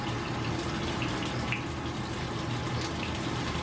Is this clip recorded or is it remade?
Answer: recorded